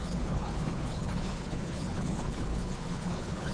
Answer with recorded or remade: remade